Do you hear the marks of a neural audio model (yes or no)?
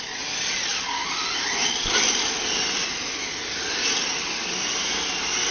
no